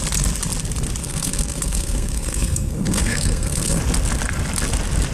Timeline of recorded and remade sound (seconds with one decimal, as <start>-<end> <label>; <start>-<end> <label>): 0.0-1.0 recorded; 1.0-3.8 remade; 3.8-5.1 recorded